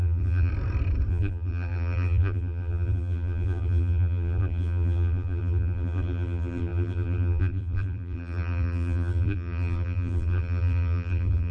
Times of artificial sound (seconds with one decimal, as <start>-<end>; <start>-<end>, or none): 0.0-0.5; 1.1-11.5